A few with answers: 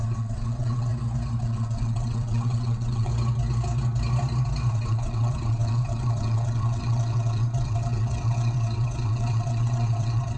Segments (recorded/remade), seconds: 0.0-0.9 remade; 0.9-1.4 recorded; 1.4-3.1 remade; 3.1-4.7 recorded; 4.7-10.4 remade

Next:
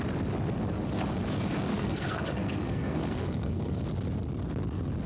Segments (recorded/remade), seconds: 0.0-1.7 recorded; 1.7-3.8 remade; 3.8-5.1 recorded